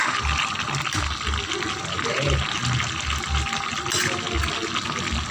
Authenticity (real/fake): real